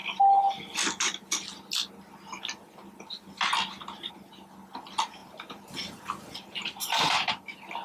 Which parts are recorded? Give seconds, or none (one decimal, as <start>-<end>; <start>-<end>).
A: 0.0-5.2; 7.3-7.8